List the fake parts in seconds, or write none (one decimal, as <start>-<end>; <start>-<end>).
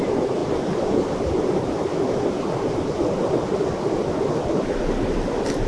none